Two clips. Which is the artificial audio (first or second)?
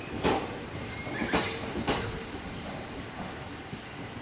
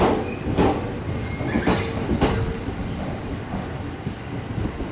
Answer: first